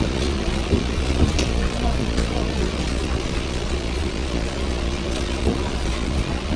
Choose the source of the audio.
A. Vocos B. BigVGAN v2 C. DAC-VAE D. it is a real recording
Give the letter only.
A